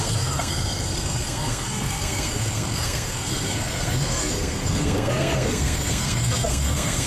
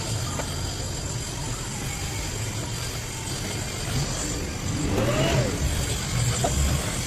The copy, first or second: first